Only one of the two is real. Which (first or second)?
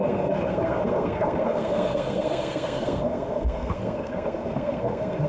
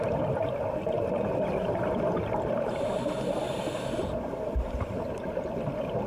second